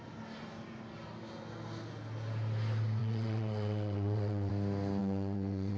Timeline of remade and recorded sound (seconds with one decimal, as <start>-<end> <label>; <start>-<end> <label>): 0.0-3.0 recorded; 3.0-4.5 remade; 4.5-5.0 recorded; 5.0-5.8 remade

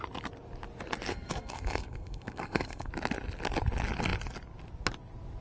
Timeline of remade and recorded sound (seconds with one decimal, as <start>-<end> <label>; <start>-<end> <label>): 0.0-1.1 recorded; 1.1-2.9 remade; 2.9-5.4 recorded

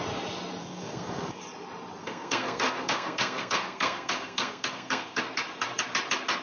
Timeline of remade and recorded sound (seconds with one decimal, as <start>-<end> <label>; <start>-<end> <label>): 0.0-0.6 recorded; 0.6-1.4 remade; 1.4-2.0 recorded; 2.0-5.2 remade; 5.2-6.4 recorded

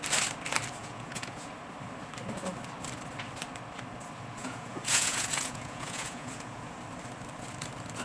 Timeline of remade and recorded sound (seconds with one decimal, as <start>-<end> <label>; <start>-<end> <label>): 0.0-0.8 recorded; 0.8-1.5 remade; 1.5-4.4 recorded; 4.4-6.8 remade; 6.8-8.0 recorded

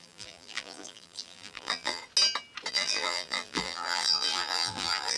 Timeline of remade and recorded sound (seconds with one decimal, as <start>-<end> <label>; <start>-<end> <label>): 0.0-2.0 remade; 2.0-2.7 recorded; 2.7-5.2 remade